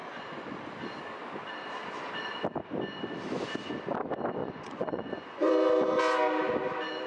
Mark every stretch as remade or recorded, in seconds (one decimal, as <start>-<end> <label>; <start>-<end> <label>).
0.0-4.4 recorded; 4.4-5.5 remade; 5.5-7.1 recorded